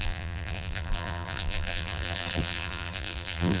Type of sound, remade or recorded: remade